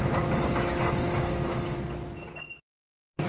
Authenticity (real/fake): real